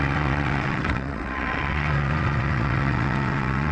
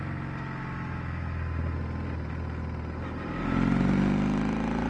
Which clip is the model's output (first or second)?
first